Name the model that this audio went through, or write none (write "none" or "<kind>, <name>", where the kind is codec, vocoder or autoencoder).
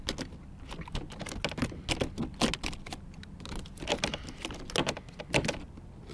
none